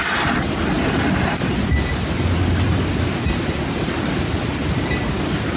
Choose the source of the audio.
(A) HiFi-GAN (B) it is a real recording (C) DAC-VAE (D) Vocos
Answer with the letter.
B